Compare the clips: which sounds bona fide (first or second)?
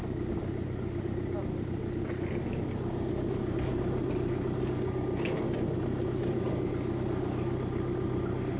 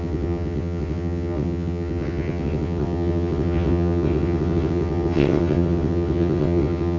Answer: first